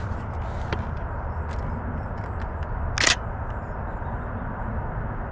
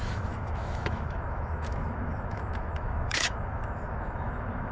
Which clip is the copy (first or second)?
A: second